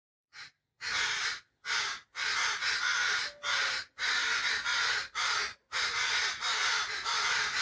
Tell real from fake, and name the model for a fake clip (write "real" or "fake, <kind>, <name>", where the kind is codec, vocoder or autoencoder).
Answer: real